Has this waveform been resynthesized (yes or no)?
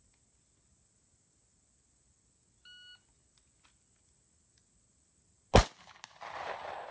no